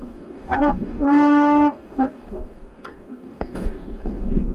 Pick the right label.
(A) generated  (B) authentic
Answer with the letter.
A